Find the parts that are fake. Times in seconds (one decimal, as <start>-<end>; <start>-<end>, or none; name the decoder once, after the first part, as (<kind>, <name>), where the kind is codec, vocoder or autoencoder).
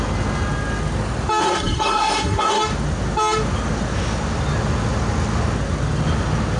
1.4-2.6 (codec, SNAC)